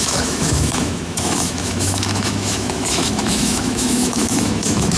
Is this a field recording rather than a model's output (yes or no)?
no